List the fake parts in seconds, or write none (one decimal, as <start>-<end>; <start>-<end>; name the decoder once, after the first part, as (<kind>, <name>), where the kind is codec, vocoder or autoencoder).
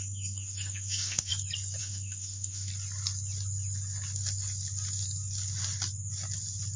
0.0-1.3 (autoencoder, DAC-VAE); 1.8-2.7